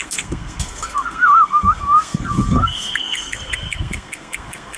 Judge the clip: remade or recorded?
remade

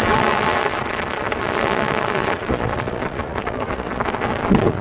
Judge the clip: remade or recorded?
remade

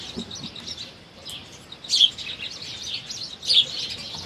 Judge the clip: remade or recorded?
recorded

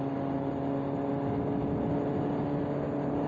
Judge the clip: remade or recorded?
recorded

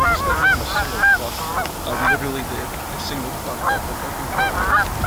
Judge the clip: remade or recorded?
recorded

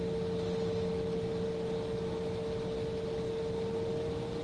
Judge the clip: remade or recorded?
recorded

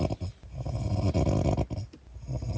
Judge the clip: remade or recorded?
recorded